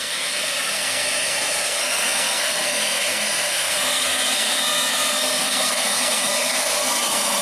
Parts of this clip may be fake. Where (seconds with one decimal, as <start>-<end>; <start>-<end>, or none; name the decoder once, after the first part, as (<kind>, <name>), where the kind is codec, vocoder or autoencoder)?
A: 0.0-7.4 (codec, SNAC)